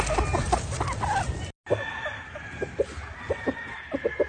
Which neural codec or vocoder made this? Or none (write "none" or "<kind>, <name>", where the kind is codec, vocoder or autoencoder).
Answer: none